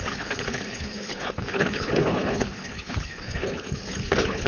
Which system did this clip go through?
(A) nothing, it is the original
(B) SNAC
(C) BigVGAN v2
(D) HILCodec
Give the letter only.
D